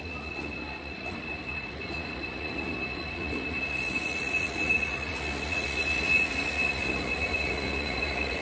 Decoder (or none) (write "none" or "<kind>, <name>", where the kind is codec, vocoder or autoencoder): vocoder, Vocos